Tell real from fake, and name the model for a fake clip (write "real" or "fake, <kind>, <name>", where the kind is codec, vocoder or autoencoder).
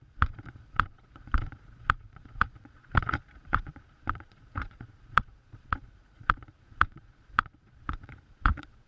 fake, vocoder, Vocos